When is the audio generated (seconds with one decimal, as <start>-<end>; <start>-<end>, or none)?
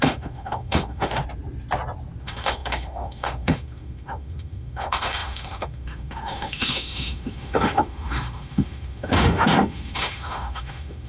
0.0-1.2; 2.2-11.1